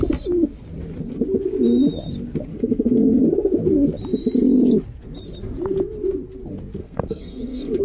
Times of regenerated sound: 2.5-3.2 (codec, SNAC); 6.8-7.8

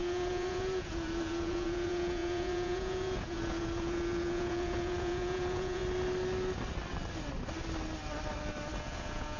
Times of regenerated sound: 0.0-5.8 (vocoder, Vocos); 8.8-9.4

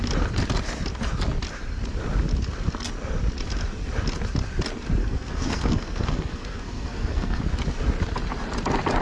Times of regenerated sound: 5.0-7.4 (codec, SNAC)

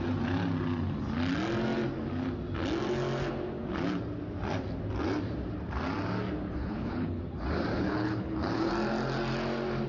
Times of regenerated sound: 6.6-7.2 (codec, HILCodec); 7.7-8.7

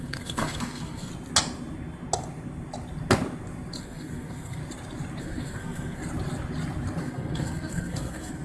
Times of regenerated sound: 0.0-1.1 (codec, SNAC); 3.8-4.6; 5.2-6.0; 7.0-8.4

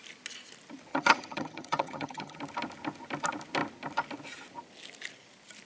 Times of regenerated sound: 0.9-2.4 (vocoder, HiFi-GAN)